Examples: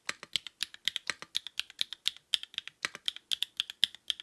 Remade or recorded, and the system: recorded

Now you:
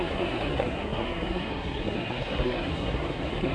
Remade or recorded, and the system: remade, codec, SNAC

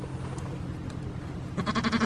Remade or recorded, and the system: recorded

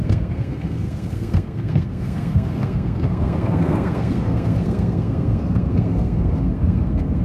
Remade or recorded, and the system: remade, codec, SNAC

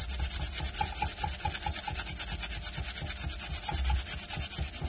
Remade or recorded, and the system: recorded